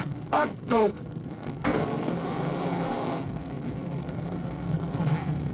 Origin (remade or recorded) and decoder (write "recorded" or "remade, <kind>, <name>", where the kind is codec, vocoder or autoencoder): remade, codec, SNAC